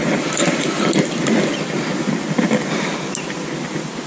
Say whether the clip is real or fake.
real